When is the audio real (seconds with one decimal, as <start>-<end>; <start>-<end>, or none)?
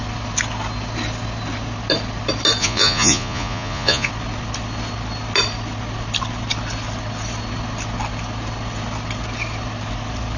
0.0-2.6; 4.1-10.4